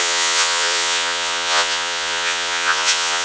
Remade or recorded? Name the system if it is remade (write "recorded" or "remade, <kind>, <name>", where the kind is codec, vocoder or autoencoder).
remade, vocoder, Vocos